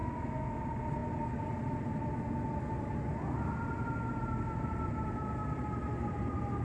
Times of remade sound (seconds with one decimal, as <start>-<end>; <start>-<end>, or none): 0.0-0.6